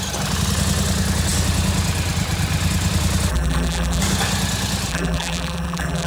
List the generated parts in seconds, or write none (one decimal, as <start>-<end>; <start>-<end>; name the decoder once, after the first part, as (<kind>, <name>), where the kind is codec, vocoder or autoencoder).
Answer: 3.3-4.0 (vocoder, BigVGAN v2); 4.9-6.1